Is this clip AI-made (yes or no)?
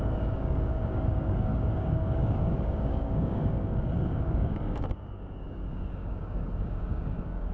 yes